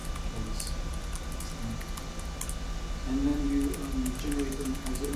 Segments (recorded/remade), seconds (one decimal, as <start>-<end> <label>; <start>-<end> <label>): 0.0-5.2 recorded